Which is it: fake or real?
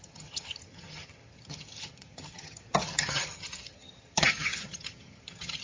fake